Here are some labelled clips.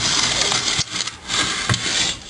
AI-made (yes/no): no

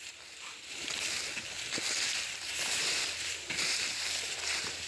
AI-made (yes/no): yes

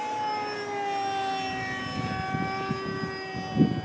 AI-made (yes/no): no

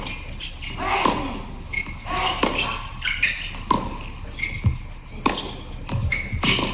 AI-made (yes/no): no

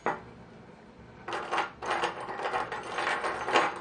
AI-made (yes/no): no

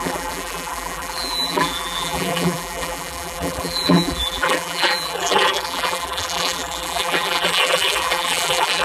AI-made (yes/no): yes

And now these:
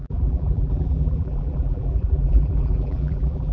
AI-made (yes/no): yes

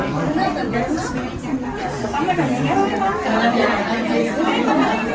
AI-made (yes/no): yes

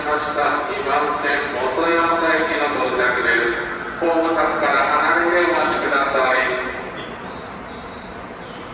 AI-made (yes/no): yes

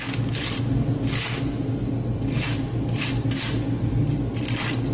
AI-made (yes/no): no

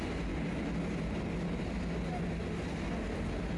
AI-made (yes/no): no